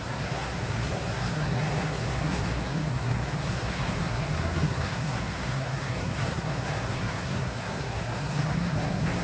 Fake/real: fake